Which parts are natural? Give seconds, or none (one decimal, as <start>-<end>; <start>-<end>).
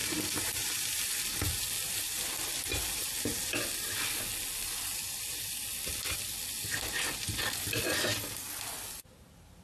0.0-9.6